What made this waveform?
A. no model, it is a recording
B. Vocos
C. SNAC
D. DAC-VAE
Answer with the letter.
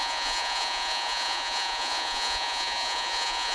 B